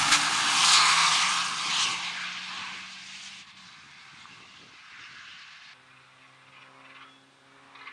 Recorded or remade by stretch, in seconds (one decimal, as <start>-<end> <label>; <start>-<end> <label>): 0.0-0.6 recorded; 0.6-1.1 remade; 1.1-7.9 recorded